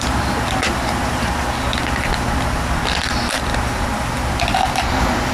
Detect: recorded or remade recorded